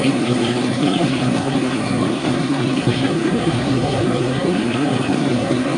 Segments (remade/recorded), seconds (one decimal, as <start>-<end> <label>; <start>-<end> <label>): 0.0-5.8 remade